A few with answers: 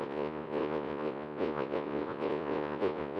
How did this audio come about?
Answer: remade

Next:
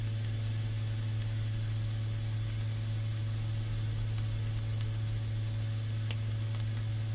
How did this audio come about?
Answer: recorded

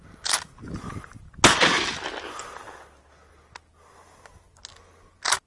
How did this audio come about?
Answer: recorded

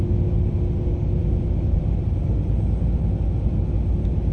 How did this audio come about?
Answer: recorded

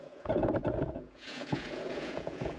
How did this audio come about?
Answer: remade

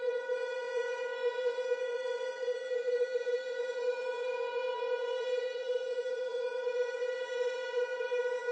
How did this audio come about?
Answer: remade